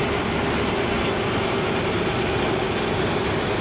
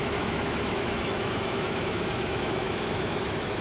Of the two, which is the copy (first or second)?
second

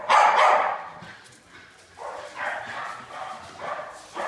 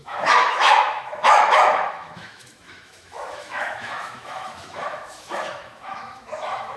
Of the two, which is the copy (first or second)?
second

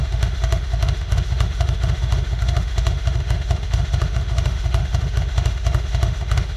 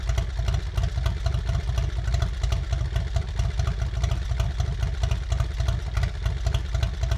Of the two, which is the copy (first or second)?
first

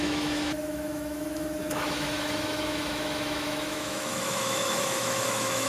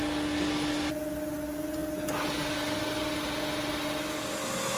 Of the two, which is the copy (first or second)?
first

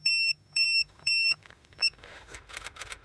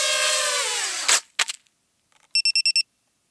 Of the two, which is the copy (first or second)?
first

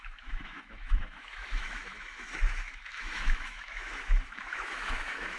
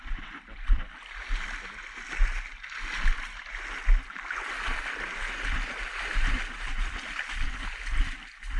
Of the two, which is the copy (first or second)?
first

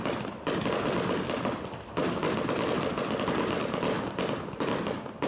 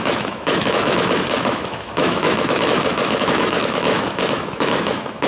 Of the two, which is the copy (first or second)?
second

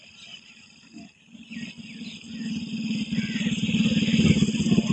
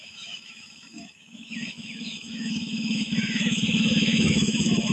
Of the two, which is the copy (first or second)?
second